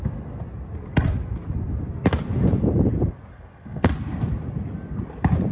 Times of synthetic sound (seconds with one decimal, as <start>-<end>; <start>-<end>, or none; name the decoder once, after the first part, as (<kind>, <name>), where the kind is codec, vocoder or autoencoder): 3.3-3.9 (codec, SNAC)